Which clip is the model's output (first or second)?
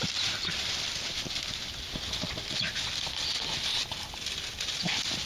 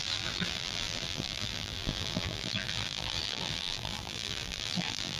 second